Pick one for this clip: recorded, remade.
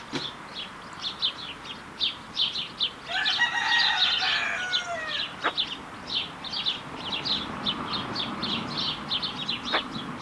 recorded